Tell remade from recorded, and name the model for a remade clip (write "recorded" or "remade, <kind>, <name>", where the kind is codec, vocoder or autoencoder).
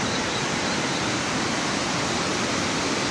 remade, vocoder, BigVGAN v2